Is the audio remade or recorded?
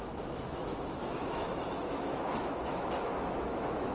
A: remade